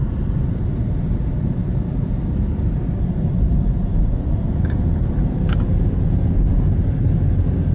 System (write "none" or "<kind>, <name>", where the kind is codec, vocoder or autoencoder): vocoder, BigVGAN v2